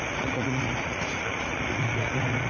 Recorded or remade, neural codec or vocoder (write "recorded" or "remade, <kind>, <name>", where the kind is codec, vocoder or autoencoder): remade, vocoder, Vocos